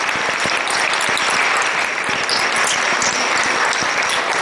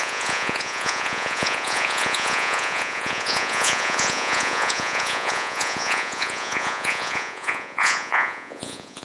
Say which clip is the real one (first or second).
first